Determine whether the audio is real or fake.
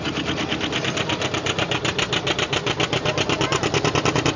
real